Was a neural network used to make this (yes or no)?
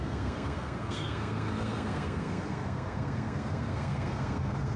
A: yes